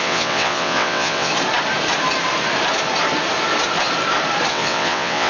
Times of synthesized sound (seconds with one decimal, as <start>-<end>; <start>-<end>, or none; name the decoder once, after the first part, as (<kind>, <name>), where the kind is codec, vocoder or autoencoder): 0.0-1.3 (vocoder, WaveNeXt); 4.5-5.3